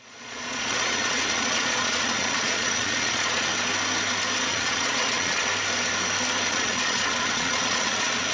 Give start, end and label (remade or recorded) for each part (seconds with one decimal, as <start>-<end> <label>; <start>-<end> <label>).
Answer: 0.0-3.5 remade; 3.5-4.5 recorded; 4.5-5.5 remade; 5.5-6.5 recorded; 6.5-8.3 remade